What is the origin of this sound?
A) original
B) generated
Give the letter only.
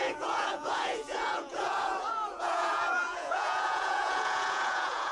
B